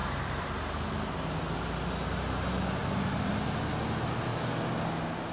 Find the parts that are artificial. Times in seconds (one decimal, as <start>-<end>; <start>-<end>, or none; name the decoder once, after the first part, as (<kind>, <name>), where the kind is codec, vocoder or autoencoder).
0.0-0.6 (vocoder, BigVGAN v2); 2.8-3.3